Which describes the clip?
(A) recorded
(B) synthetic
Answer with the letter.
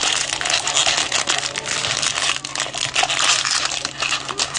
A